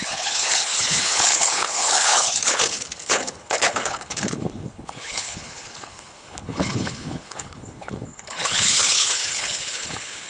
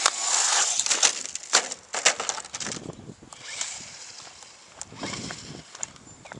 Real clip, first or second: second